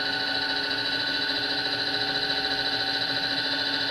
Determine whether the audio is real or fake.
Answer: real